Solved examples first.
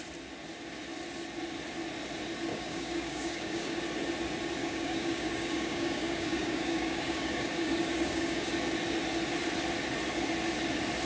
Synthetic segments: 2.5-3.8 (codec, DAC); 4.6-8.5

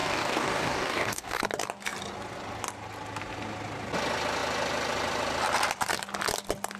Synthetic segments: 0.0-1.4 (codec, DAC)

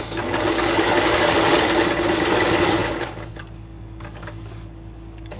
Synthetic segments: 0.0-1.5 (codec, DAC); 2.3-5.4

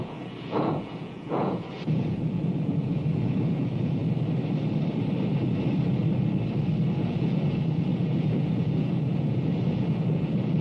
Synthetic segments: 0.0-4.0 (vocoder, Vocos); 6.9-10.6

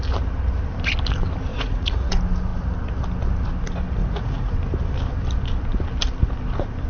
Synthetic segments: 1.5-2.1 (vocoder, Vocos); 4.0-4.5

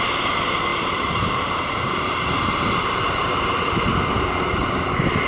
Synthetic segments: 0.7-3.9 (vocoder, BigVGAN v2); 4.6-5.3